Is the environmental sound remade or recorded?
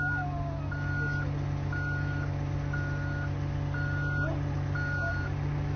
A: recorded